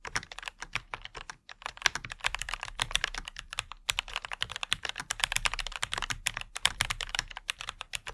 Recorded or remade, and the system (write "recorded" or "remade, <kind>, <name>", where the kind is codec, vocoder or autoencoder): remade, vocoder, BigVGAN v2